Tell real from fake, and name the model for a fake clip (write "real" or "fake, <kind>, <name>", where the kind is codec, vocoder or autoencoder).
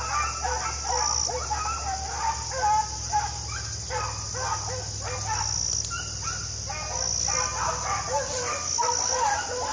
real